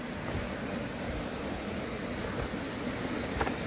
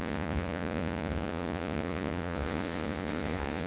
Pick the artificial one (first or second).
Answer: second